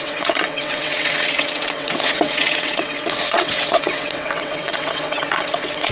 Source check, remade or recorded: remade